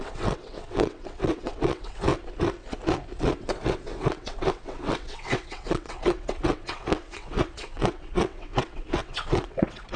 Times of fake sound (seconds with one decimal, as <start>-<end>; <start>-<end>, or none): 0.0-2.1; 3.2-10.0